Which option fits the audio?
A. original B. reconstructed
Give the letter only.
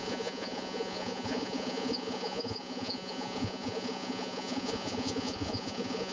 B